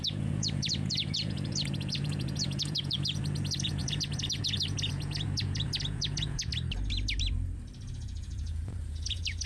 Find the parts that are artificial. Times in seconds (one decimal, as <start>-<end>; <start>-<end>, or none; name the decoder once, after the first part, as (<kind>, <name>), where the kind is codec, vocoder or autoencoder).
0.0-6.5 (vocoder, Vocos); 7.9-9.5